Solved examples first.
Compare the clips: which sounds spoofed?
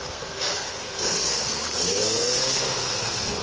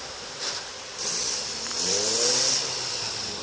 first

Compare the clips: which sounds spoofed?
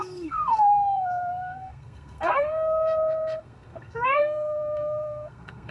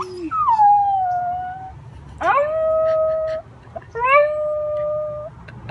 first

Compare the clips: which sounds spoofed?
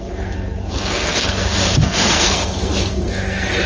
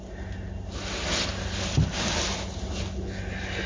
first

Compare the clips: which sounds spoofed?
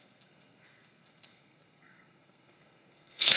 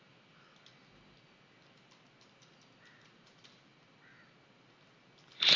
first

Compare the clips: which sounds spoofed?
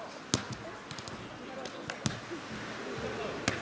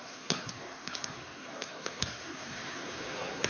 second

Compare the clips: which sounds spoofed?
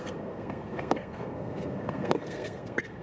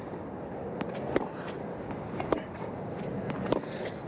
first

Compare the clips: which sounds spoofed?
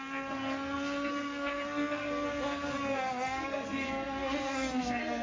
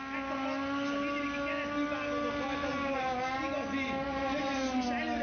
first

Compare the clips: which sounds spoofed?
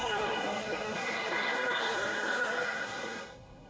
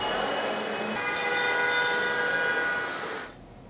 first